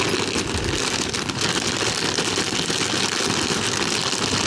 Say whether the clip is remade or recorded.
recorded